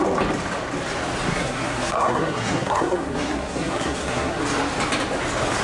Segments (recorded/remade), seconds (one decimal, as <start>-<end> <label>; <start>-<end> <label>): 0.0-1.3 recorded; 1.3-4.4 remade; 4.4-5.6 recorded